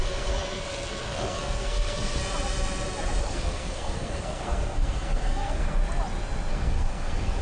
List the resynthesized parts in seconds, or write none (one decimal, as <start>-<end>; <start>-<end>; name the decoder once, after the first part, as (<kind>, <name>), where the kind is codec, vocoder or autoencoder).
0.0-2.2 (codec, SNAC); 3.2-5.8; 6.5-7.4